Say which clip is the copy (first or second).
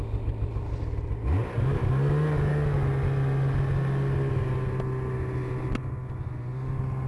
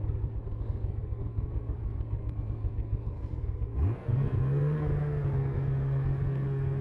second